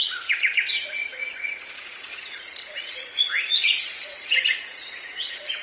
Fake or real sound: fake